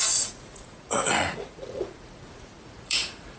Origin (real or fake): fake